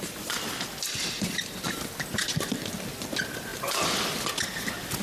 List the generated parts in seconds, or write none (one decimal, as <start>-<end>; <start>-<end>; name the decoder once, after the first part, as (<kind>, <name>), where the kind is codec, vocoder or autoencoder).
none